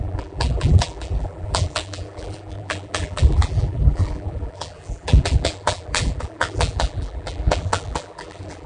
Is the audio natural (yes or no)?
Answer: no